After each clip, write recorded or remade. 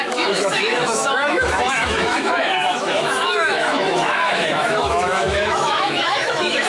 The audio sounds remade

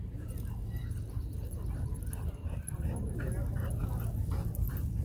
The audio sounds recorded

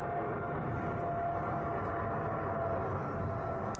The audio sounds recorded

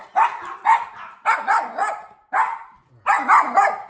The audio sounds recorded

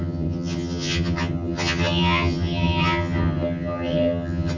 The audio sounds remade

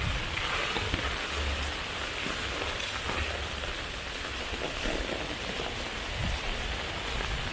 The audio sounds recorded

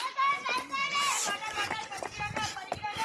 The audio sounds recorded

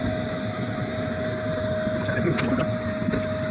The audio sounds recorded